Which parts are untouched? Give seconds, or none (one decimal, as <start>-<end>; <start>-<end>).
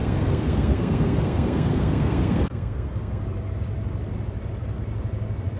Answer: 3.2-5.6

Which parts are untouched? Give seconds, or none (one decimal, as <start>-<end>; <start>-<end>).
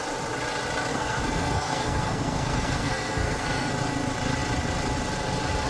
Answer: 0.0-0.9; 3.7-5.7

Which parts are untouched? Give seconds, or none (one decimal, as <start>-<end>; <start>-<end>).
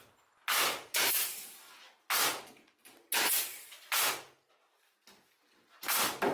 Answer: 0.0-6.3